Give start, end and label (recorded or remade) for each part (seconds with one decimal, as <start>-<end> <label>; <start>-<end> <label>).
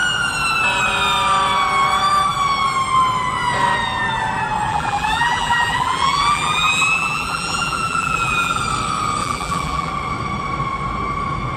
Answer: 0.0-4.7 recorded; 4.7-8.6 remade; 8.6-9.2 recorded; 9.2-9.9 remade; 9.9-11.6 recorded